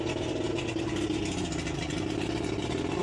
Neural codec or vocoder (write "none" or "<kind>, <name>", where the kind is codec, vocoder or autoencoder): none